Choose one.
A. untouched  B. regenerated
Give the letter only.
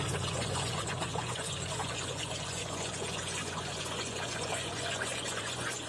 B